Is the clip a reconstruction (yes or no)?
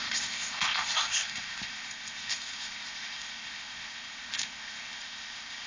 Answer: yes